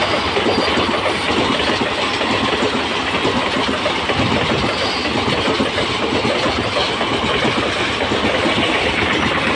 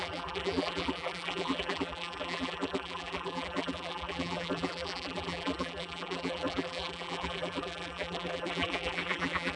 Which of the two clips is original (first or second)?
first